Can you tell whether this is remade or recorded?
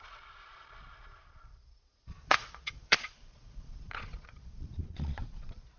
remade